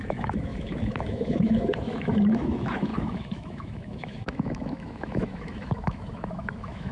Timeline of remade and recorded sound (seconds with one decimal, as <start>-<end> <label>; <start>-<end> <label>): 0.0-6.9 remade